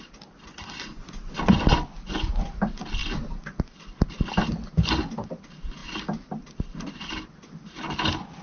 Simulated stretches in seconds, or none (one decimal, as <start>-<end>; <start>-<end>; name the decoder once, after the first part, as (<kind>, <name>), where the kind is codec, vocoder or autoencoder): none